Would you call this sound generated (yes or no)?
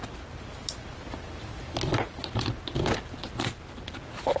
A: no